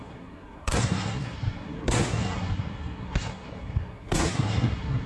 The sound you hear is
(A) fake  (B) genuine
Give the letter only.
A